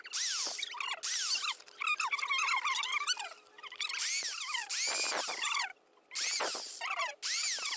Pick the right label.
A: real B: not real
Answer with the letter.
A